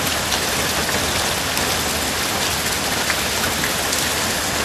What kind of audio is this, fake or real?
real